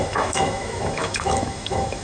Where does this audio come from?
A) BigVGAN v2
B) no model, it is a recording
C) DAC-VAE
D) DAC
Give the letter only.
C